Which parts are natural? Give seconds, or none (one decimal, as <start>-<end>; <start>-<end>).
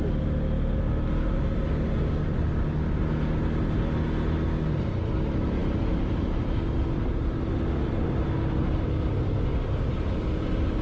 0.0-10.8